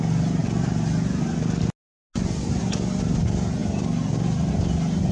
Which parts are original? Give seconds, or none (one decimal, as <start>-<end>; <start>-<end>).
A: 0.0-5.1